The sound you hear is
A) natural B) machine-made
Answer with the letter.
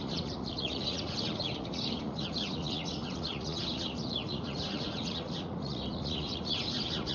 B